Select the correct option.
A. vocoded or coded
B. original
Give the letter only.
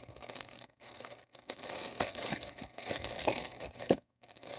A